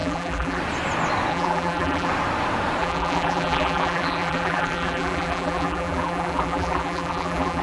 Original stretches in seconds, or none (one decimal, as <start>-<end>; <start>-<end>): 0.6-1.3; 2.1-2.8